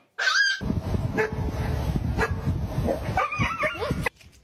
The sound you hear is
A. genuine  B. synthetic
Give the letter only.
A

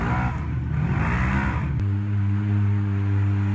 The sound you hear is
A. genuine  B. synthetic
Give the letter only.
A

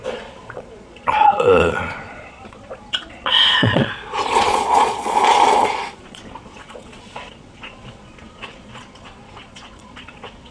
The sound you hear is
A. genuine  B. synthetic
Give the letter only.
B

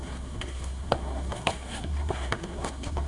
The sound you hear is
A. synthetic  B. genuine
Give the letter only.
A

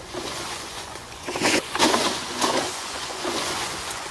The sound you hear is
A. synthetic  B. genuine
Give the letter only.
A